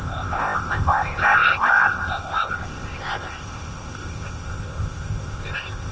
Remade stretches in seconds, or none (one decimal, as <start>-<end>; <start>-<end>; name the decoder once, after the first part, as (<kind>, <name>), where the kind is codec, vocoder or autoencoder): 0.0-5.9 (codec, ZipCodec)